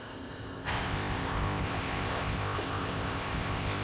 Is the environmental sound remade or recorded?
remade